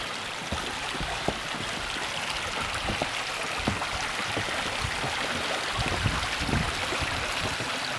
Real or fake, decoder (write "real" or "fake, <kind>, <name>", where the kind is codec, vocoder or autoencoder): real